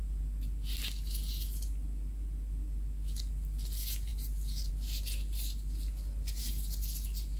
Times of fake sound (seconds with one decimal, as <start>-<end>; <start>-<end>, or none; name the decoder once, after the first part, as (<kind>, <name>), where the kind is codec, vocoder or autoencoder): none